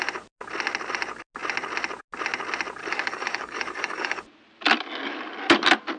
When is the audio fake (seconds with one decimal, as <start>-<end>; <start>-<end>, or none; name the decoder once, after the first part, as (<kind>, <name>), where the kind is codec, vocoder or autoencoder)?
2.8-4.2 (codec, DAC)